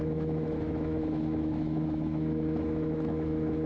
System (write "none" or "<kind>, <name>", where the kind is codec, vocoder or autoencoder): autoencoder, DAC-VAE